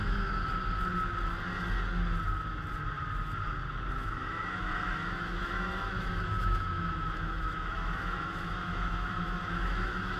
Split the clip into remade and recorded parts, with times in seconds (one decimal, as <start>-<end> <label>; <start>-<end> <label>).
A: 0.0-0.4 remade; 0.4-3.9 recorded; 3.9-10.2 remade